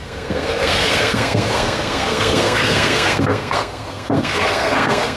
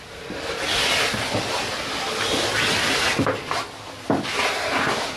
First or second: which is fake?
first